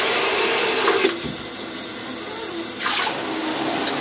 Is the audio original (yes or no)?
yes